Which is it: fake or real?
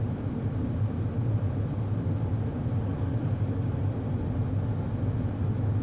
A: real